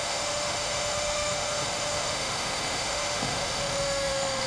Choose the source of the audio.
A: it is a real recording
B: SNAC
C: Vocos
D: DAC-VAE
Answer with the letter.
D